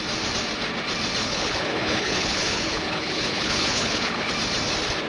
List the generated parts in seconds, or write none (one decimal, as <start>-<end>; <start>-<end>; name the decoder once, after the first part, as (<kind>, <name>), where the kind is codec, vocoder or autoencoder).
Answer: 1.2-4.3 (codec, HILCodec)